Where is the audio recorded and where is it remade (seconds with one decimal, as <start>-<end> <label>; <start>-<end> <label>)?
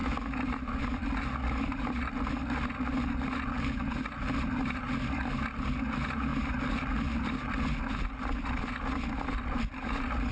0.0-6.3 recorded; 6.3-7.2 remade; 7.2-10.3 recorded